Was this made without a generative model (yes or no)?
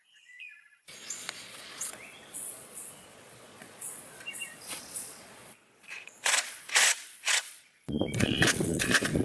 no